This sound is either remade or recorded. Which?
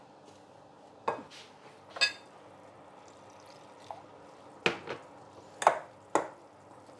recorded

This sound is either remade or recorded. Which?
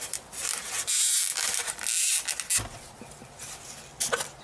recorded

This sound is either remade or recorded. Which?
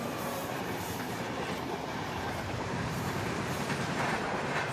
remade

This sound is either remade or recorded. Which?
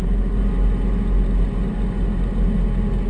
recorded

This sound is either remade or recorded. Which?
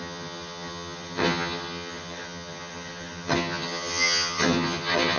remade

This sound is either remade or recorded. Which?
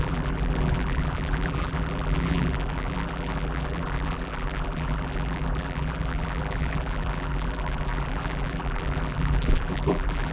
remade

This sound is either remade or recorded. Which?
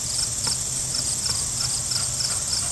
recorded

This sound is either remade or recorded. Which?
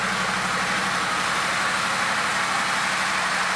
recorded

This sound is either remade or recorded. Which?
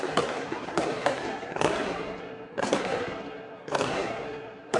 remade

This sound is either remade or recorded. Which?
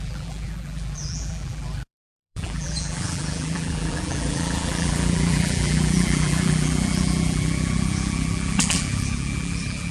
remade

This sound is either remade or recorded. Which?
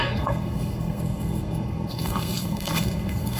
remade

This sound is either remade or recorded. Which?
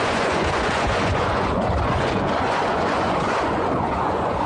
remade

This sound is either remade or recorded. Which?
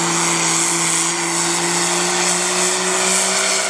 recorded